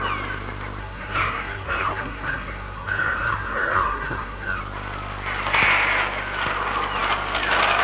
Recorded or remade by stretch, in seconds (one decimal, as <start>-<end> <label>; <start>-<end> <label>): 0.0-0.8 recorded; 0.8-4.6 remade; 4.6-7.8 recorded